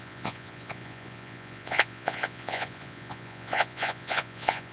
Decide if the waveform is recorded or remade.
remade